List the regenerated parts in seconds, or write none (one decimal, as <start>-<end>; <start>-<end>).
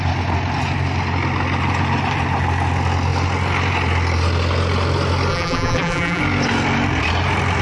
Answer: 5.3-6.2